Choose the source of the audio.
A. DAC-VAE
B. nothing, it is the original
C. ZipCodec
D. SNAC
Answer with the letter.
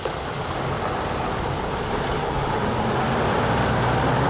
B